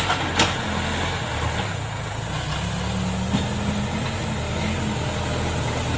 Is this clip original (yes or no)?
yes